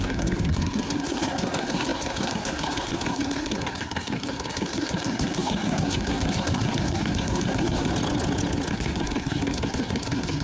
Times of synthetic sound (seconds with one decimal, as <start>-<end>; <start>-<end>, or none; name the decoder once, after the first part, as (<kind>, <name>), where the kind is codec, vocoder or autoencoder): 0.0-7.9 (codec, SNAC); 8.7-10.4